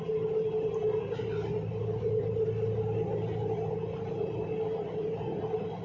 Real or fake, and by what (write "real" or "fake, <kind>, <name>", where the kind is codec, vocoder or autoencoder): real